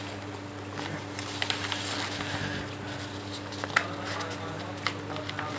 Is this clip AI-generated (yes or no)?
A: no